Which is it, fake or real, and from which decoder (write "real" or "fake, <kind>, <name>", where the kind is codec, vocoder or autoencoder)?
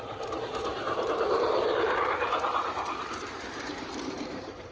fake, vocoder, BigVGAN v2